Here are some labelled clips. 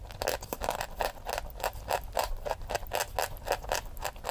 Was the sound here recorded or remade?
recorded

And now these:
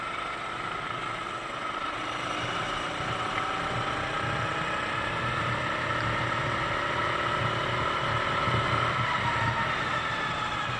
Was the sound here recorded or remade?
recorded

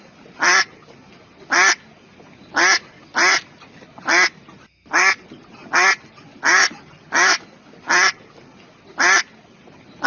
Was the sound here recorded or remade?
recorded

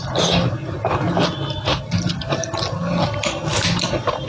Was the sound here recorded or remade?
recorded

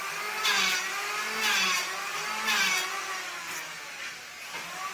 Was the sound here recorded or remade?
recorded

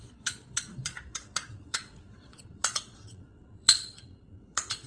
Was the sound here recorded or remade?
remade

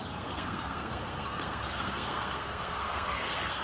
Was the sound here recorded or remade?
remade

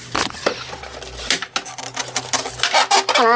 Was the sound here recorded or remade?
recorded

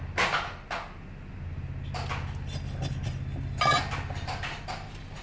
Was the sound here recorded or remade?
recorded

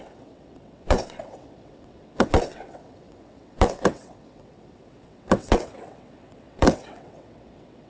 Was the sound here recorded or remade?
remade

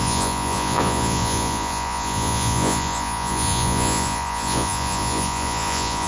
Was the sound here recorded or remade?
remade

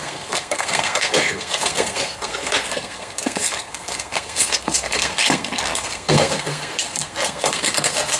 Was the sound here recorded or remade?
remade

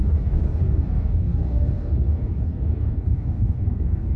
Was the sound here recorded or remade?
remade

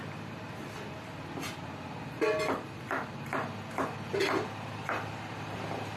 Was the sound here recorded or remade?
recorded